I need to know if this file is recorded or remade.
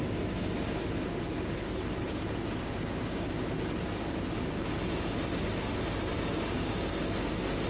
recorded